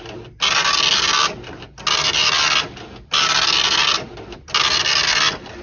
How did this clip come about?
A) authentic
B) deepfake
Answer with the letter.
A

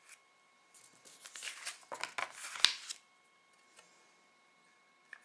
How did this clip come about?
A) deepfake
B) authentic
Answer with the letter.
B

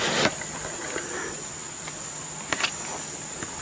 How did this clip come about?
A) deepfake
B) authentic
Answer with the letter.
B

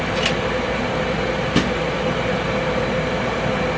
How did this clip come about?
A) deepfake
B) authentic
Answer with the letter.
B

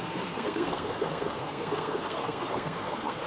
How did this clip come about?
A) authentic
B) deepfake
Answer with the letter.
B